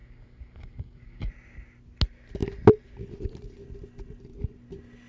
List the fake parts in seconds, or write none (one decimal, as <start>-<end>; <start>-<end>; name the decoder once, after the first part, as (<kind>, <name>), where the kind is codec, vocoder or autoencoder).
0.0-1.3 (codec, DAC)

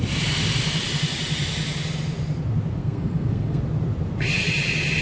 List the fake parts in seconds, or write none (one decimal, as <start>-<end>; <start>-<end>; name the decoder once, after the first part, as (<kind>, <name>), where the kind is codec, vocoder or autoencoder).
2.8-3.6 (codec, SNAC)

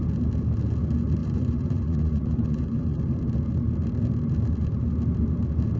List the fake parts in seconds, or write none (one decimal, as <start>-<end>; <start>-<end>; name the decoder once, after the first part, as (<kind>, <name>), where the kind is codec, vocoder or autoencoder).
1.2-3.0 (vocoder, Vocos)

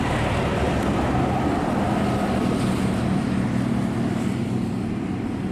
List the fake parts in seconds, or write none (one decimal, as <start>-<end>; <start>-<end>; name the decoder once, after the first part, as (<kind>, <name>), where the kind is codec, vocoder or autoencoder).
none

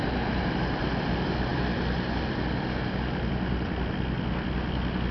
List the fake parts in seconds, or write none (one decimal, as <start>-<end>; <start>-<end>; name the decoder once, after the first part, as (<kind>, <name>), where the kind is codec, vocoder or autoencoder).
none